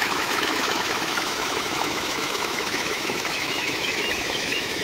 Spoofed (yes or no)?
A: yes